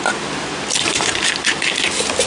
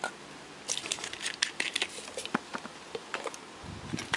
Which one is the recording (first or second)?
second